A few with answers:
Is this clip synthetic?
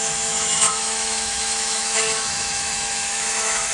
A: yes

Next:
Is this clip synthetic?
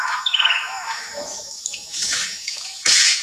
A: yes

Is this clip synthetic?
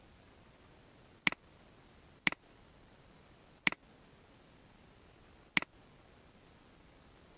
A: no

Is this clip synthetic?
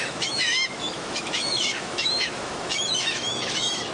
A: yes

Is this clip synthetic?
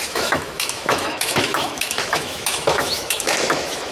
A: yes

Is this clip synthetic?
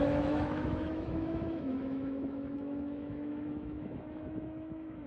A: yes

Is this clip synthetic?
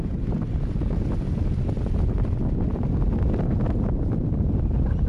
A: no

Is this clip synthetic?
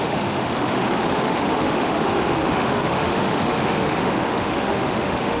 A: yes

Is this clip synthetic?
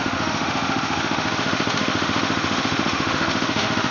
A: yes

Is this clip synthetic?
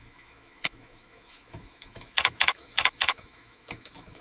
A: yes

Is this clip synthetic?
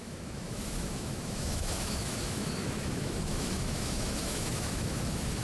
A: yes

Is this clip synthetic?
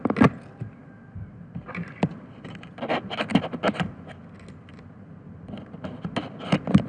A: no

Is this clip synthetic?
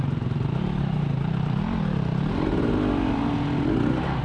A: no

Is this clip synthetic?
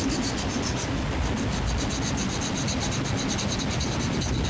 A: no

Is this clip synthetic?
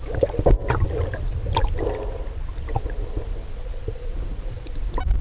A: no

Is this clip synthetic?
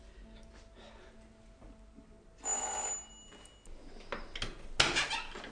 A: no